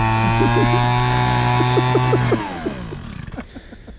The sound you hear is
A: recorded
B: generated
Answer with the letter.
A